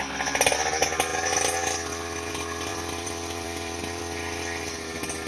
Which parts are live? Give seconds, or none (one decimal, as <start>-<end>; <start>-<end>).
0.0-2.7; 4.0-5.3